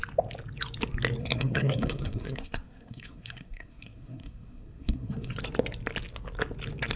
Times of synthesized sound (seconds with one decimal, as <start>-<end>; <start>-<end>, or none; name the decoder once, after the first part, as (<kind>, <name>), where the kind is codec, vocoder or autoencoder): 1.2-5.4 (codec, SNAC)